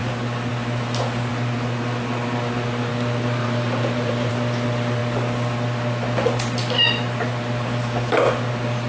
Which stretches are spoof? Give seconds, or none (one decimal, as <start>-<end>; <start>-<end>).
3.4-4.3